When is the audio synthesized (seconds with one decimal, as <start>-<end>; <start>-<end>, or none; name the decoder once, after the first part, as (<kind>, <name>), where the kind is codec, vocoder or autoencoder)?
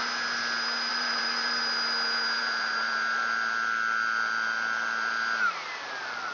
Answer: 0.9-1.6 (vocoder, BigVGAN v2); 2.4-3.2